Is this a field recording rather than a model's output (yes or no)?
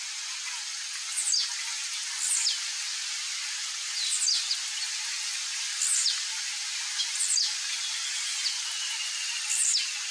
yes